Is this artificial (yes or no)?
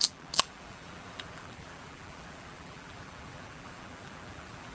yes